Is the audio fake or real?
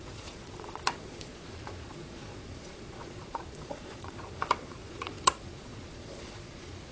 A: fake